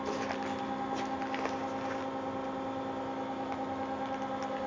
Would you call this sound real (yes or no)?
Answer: yes